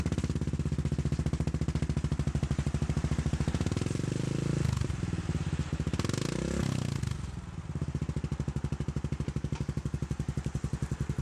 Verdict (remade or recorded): recorded